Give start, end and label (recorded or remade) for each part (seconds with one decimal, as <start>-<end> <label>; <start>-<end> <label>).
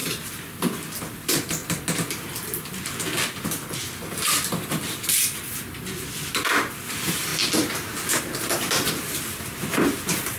0.0-1.6 remade; 1.6-4.0 recorded; 4.0-7.3 remade; 7.3-8.2 recorded; 8.2-10.4 remade